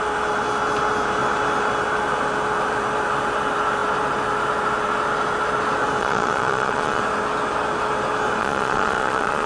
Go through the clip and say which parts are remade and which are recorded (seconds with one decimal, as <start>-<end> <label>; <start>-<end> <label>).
0.0-6.0 recorded; 6.0-7.0 remade; 7.0-8.4 recorded; 8.4-9.5 remade